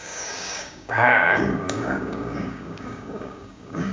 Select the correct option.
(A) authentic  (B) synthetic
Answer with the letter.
B